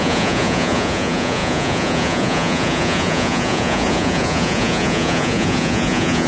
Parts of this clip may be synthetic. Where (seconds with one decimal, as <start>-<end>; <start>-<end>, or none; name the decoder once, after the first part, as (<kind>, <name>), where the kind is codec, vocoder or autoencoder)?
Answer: 0.0-6.3 (vocoder, Vocos)